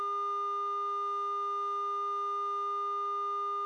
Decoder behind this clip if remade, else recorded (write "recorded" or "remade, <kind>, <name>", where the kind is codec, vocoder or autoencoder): recorded